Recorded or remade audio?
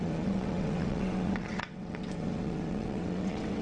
remade